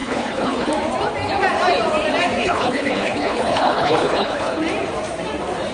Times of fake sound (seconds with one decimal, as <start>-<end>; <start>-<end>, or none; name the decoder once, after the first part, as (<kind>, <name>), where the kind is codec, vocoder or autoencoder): 0.0-0.7 (codec, HILCodec); 2.4-4.6